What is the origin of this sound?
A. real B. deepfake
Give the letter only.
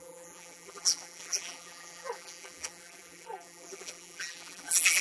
B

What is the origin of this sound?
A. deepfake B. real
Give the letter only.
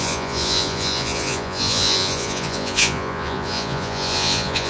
A